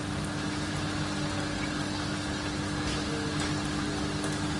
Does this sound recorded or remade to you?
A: recorded